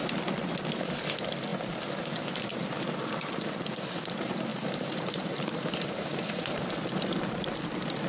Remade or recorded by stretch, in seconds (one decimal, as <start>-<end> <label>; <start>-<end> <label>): 0.0-4.5 recorded; 4.5-6.6 remade; 6.6-8.1 recorded